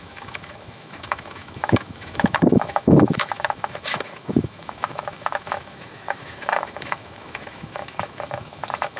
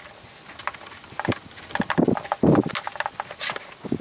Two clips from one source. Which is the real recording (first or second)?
second